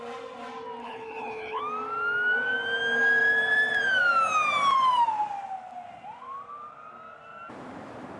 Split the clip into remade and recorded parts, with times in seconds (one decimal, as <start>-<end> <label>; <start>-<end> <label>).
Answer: 0.0-0.8 recorded; 0.8-1.6 remade; 1.6-8.2 recorded